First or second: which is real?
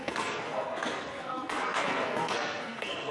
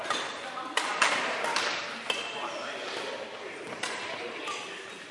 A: second